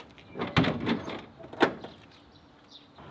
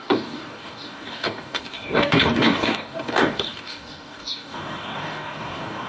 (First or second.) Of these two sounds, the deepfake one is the second